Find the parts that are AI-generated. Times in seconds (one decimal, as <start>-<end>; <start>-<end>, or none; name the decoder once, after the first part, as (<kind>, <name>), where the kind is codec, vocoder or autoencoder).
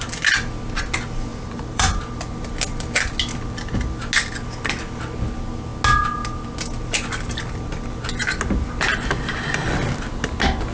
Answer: 1.3-2.0 (vocoder, BigVGAN v2)